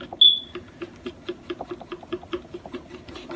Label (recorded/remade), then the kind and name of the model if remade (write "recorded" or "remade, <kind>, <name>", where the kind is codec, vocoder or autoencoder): recorded